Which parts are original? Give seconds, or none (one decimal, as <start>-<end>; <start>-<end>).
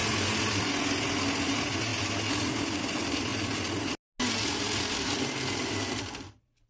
0.0-1.9; 2.8-6.7